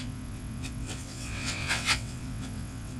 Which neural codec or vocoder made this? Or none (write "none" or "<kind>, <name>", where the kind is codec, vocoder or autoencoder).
vocoder, WaveNeXt